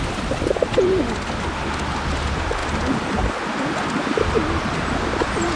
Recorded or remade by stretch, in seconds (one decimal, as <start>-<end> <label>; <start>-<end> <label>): 0.0-5.6 recorded